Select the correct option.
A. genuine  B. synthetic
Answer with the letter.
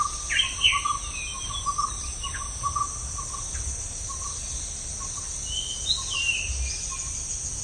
A